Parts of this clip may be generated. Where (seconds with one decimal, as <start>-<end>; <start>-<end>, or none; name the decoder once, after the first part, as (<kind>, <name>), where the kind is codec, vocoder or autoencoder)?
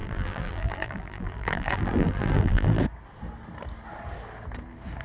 0.0-2.8 (vocoder, BigVGAN v2)